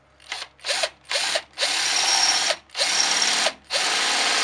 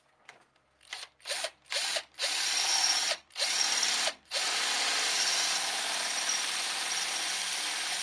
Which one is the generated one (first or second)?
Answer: second